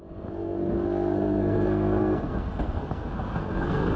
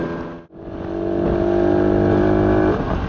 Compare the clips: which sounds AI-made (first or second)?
first